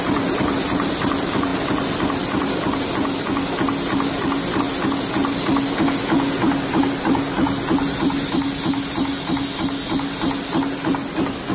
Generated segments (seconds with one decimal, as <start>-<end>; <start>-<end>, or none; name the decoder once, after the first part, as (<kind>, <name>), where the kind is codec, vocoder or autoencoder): none